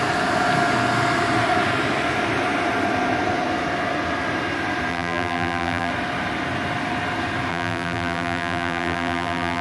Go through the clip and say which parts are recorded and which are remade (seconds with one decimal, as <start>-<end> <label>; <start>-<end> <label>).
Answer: 0.0-4.9 recorded; 4.9-5.9 remade; 5.9-7.5 recorded; 7.5-9.6 remade